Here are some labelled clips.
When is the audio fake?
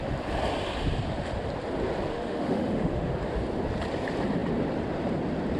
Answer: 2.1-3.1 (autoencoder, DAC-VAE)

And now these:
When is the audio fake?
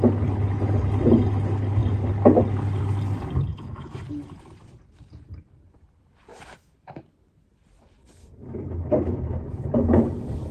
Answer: 3.5-4.0 (autoencoder, DAC-VAE); 6.3-7.0; 8.2-9.2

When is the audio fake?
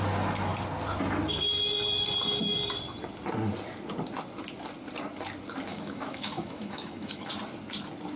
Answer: 5.7-7.3 (autoencoder, DAC-VAE)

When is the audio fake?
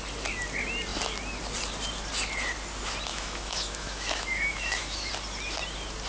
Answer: 3.1-5.1 (autoencoder, DAC-VAE)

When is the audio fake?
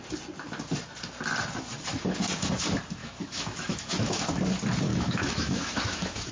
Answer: 3.0-4.4 (autoencoder, DAC-VAE); 4.9-6.3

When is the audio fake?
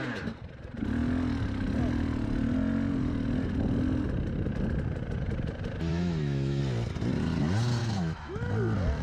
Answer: 5.9-6.6 (autoencoder, DAC-VAE); 7.8-8.5